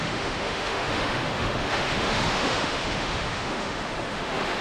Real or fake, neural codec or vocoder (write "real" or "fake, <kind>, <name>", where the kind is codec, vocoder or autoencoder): fake, autoencoder, DAC-VAE